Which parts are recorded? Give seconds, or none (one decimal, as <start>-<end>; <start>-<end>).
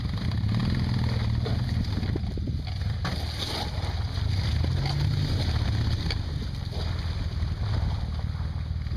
0.0-9.0